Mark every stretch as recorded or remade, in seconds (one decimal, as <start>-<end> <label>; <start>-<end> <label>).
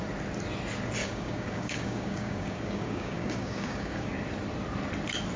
0.0-1.0 recorded; 1.0-4.2 remade; 4.2-5.4 recorded